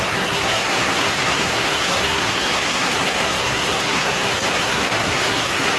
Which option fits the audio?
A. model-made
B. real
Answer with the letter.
A